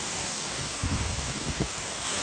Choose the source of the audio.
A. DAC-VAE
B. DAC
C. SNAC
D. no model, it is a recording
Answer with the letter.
B